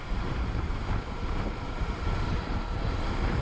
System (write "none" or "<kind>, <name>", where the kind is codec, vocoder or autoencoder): vocoder, BigVGAN v2